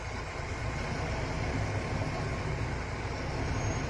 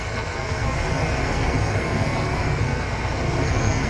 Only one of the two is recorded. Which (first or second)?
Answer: first